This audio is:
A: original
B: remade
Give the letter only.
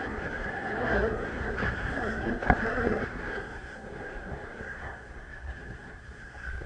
B